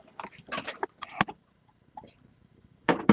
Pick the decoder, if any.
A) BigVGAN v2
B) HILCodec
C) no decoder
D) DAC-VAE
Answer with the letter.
A